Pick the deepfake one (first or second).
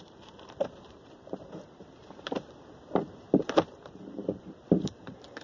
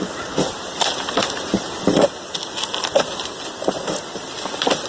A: first